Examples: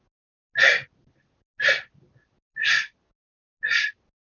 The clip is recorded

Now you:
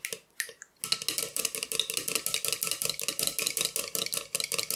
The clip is recorded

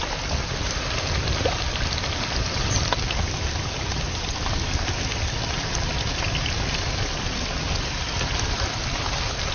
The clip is recorded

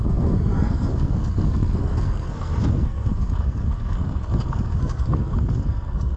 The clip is remade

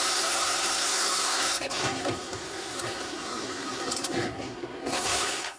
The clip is remade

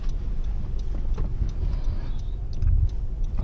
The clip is recorded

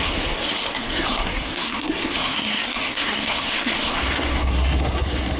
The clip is remade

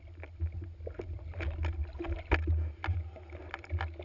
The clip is recorded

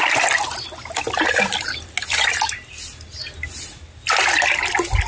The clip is recorded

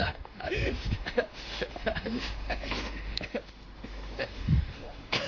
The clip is remade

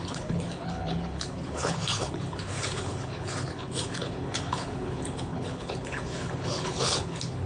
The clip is remade